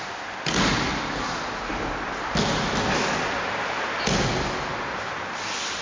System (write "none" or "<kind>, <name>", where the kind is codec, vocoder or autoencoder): none